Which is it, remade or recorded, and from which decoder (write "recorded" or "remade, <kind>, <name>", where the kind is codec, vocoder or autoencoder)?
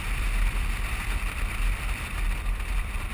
remade, vocoder, BigVGAN v2